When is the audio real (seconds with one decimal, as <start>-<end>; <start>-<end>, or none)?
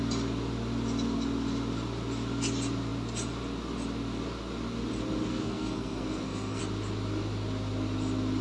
0.0-5.3; 6.6-8.4